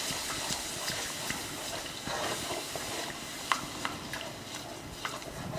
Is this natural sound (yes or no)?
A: yes